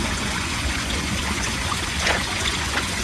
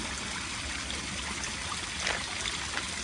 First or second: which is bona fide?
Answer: second